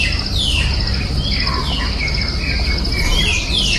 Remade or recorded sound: recorded